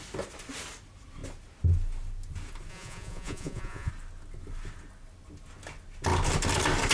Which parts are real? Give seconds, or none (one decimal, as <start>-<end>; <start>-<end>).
0.0-2.7; 3.9-6.9